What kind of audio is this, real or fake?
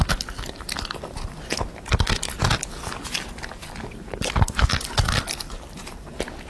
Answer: real